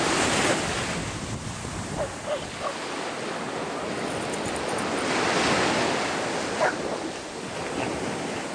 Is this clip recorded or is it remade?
recorded